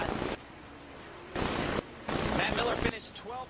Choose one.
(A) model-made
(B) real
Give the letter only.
B